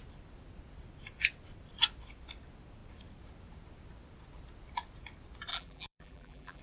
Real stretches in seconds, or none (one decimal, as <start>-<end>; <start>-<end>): 0.0-5.5